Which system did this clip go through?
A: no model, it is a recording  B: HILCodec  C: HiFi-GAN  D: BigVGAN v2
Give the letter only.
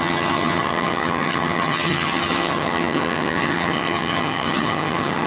C